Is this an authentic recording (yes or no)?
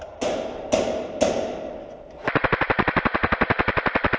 yes